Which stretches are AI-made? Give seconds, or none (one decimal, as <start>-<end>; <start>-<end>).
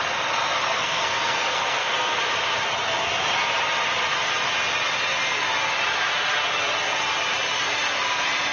0.7-2.2